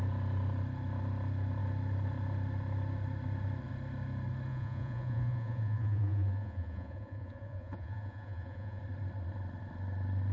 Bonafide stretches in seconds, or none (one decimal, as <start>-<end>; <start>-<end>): 0.0-4.5; 8.8-10.3